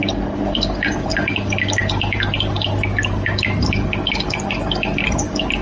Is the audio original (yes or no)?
yes